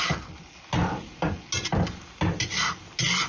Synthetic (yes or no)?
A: no